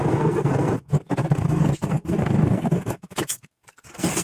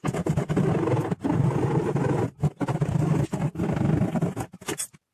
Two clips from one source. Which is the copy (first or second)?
first